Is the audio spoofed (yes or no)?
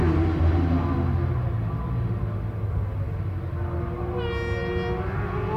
no